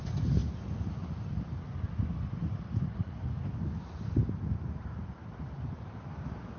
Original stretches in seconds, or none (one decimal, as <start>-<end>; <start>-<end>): 0.0-6.6